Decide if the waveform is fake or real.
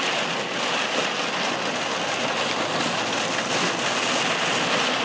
real